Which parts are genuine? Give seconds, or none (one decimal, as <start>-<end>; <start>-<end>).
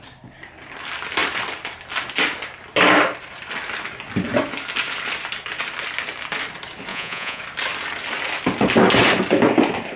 0.0-6.9; 7.4-10.0